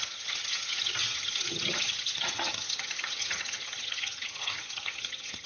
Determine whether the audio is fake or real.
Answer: fake